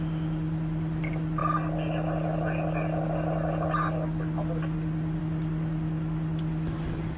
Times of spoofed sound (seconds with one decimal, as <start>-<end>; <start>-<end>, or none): none